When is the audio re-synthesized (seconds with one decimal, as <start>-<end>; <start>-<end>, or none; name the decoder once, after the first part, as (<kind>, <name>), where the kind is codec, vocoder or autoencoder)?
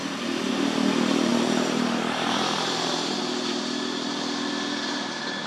0.0-0.5 (vocoder, BigVGAN v2); 1.3-3.2